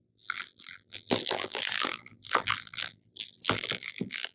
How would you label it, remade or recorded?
remade